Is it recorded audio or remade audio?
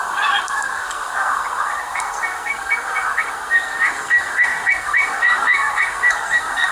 remade